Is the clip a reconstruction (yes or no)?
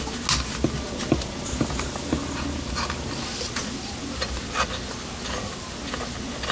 no